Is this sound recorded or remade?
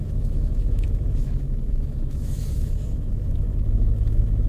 remade